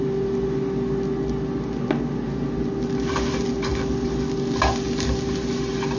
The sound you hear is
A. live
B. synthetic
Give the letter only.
A